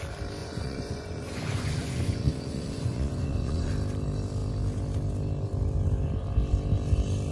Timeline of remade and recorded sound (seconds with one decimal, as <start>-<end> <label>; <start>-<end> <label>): 0.0-0.4 recorded; 0.4-3.7 remade; 3.7-7.3 recorded